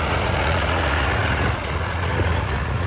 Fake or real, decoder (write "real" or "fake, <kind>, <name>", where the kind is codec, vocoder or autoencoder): fake, vocoder, Vocos